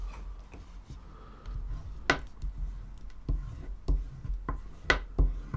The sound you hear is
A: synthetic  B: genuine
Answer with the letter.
B